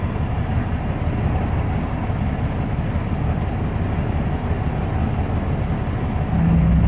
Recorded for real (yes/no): yes